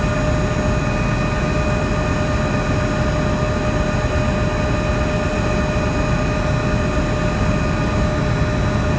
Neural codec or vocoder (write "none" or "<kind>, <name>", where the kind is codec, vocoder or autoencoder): none